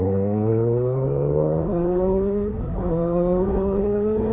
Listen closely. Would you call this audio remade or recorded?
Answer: remade